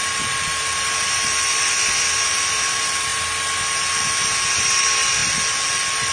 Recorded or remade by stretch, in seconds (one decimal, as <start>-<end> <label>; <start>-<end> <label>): 0.0-3.1 remade; 3.1-4.5 recorded; 4.5-5.2 remade; 5.2-6.1 recorded